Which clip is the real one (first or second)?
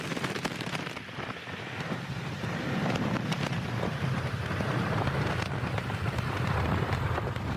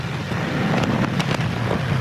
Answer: second